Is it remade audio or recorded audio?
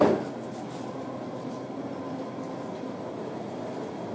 recorded